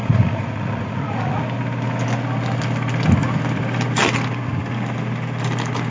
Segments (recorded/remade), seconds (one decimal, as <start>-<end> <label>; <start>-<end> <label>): 0.0-1.4 remade; 1.4-5.9 recorded